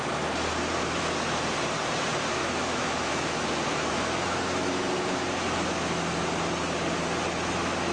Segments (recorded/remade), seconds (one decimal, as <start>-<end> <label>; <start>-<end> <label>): 0.0-2.4 recorded; 2.4-5.2 remade; 5.2-7.9 recorded